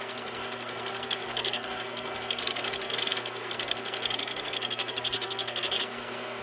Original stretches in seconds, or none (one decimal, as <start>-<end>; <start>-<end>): none